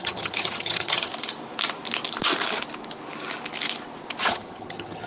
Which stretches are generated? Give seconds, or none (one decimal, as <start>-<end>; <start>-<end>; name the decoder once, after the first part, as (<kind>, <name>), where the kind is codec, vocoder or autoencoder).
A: 0.0-1.1 (vocoder, HiFi-GAN); 4.2-5.1